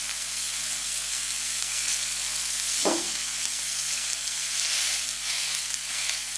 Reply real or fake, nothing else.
fake